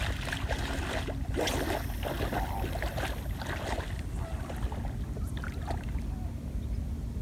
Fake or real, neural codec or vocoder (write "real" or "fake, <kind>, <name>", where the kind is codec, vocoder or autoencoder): real